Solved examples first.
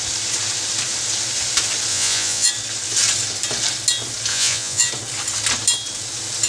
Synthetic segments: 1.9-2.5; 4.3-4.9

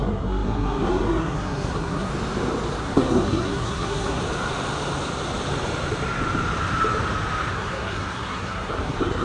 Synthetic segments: 0.0-2.1; 2.8-4.2; 7.5-9.2

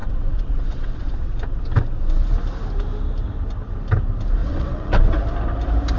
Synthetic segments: 0.0-1.1; 4.4-5.1

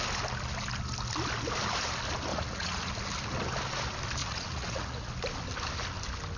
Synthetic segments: 2.3-2.9; 4.2-5.1

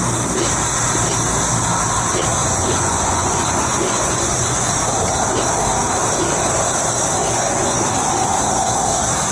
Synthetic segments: 2.4-4.7; 7.2-7.8

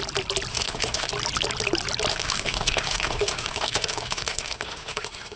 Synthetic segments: 0.5-1.1; 2.1-5.4

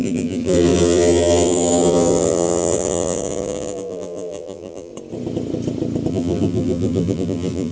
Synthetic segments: 0.0-4.9; 6.1-7.7

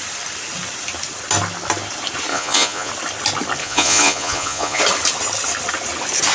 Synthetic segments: 2.3-2.9; 3.6-4.8